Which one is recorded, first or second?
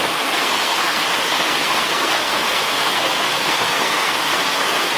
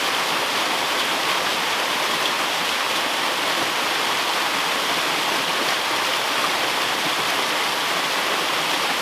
second